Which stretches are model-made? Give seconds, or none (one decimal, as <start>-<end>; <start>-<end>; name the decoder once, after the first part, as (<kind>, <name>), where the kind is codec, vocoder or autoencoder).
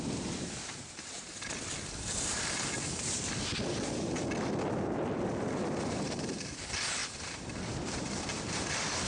none